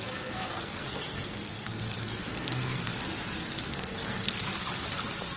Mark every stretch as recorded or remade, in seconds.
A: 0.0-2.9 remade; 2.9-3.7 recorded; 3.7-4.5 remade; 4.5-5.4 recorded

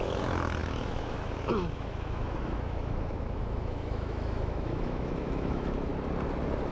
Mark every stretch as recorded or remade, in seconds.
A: 0.0-5.9 remade; 5.9-6.7 recorded

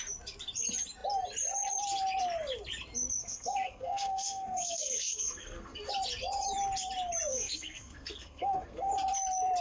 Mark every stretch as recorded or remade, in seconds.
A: 0.0-3.2 recorded; 3.2-5.9 remade; 5.9-7.3 recorded; 7.3-8.9 remade; 8.9-9.6 recorded

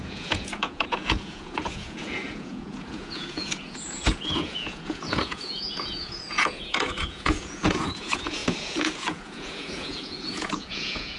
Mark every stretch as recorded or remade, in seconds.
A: 0.0-11.2 remade